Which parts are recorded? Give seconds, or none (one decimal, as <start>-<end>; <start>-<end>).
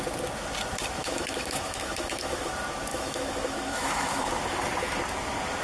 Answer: 0.0-1.0; 2.5-2.9; 4.3-5.6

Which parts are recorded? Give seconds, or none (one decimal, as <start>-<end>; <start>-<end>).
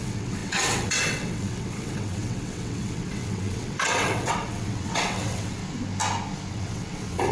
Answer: 5.6-6.5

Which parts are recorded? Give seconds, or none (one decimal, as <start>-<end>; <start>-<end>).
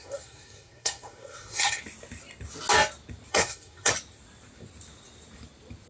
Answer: 1.8-3.3; 3.9-5.9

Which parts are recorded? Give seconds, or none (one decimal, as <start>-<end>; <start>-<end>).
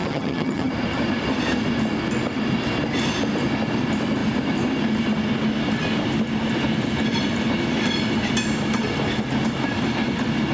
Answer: 0.7-10.5